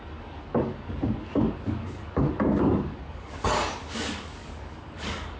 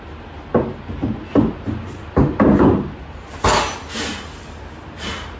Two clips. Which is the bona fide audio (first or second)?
second